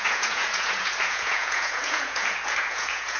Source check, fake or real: fake